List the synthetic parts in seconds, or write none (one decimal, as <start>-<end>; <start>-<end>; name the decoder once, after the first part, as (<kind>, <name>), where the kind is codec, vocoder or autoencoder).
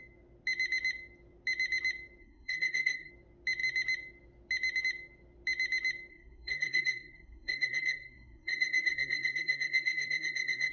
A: 2.2-3.1 (codec, SNAC); 6.1-10.7